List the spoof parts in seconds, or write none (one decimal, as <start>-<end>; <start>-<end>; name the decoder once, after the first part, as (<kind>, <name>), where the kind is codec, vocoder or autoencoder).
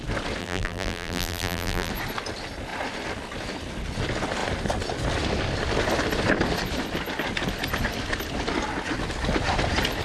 0.4-1.9 (vocoder, BigVGAN v2)